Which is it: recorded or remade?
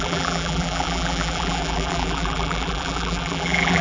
remade